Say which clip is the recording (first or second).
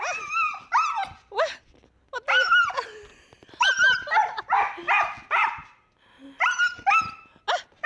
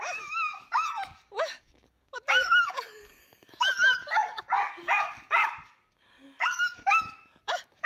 first